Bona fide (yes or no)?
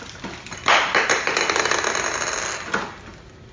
yes